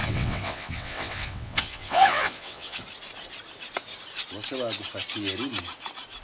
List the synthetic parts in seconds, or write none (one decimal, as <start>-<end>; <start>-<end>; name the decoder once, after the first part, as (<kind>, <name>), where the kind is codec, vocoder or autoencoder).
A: 0.0-2.8 (vocoder, WaveNeXt)